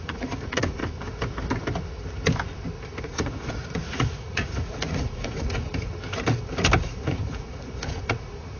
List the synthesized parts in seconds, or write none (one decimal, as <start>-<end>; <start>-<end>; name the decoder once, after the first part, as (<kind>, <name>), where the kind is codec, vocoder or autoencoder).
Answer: 0.0-0.8 (vocoder, Vocos); 3.0-5.7; 6.8-8.6